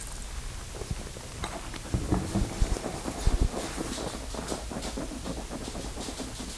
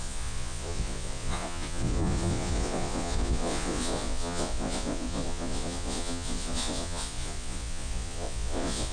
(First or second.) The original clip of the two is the first